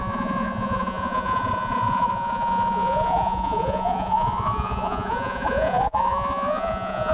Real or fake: fake